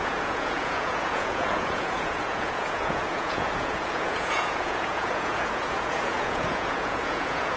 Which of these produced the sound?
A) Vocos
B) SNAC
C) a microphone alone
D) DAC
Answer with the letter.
A